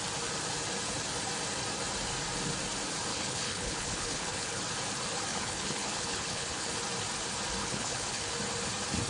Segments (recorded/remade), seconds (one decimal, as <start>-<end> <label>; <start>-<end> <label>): 0.0-3.1 recorded; 3.1-4.6 remade; 4.6-5.3 recorded; 5.3-6.7 remade; 6.7-7.6 recorded; 7.6-8.3 remade; 8.3-9.1 recorded